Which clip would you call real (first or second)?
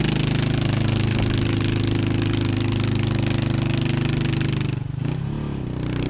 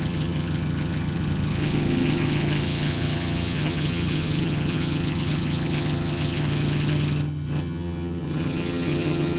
first